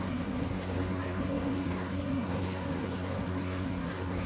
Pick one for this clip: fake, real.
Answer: fake